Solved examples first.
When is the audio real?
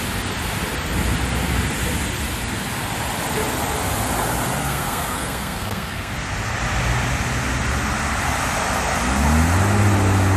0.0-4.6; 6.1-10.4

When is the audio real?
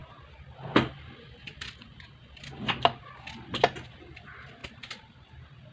0.0-5.7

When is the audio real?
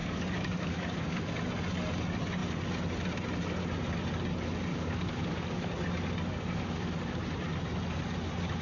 1.2-4.7; 5.7-6.3; 7.2-8.6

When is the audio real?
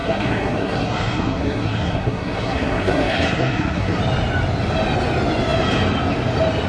4.0-6.7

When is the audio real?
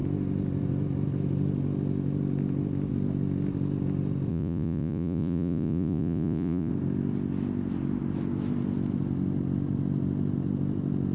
0.0-4.3; 6.7-11.1